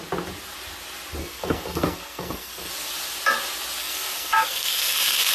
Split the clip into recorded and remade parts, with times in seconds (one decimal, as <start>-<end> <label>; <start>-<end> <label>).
0.0-1.2 recorded; 1.2-2.7 remade; 2.7-3.8 recorded; 3.8-5.3 remade